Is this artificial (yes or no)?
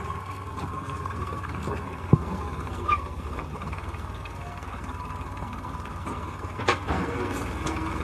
yes